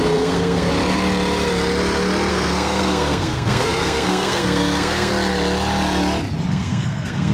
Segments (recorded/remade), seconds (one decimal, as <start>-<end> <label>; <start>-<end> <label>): 0.0-0.7 remade; 0.7-2.3 recorded; 2.3-5.1 remade; 5.1-6.5 recorded; 6.5-7.3 remade